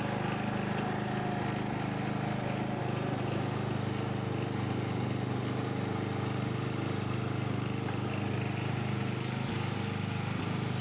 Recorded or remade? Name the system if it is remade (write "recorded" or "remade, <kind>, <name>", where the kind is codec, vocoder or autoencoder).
recorded